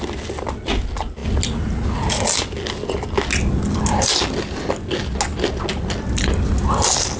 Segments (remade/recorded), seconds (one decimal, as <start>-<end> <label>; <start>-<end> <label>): 0.0-7.2 recorded